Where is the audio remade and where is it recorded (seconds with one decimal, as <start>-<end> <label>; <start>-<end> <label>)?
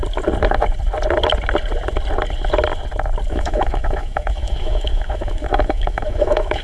0.0-3.3 recorded; 3.3-6.6 remade